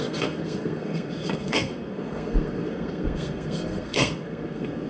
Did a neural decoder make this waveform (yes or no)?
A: yes